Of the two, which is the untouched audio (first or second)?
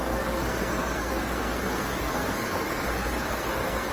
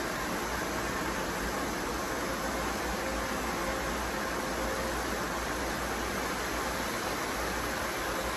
second